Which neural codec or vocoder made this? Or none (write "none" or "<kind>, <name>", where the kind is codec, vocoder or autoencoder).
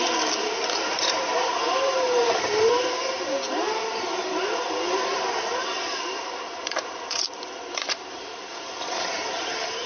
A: vocoder, BigVGAN v2